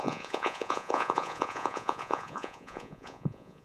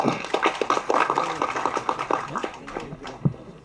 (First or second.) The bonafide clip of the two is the second